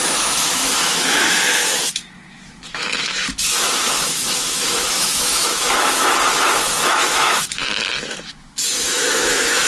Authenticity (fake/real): fake